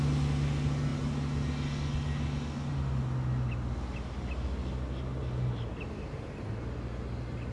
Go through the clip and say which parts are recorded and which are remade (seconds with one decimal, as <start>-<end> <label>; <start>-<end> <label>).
0.0-7.5 recorded